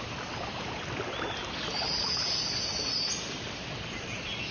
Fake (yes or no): no